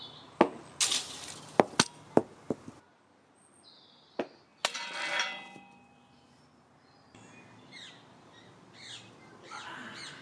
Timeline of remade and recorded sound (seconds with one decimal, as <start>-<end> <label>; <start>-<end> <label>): 0.0-10.2 recorded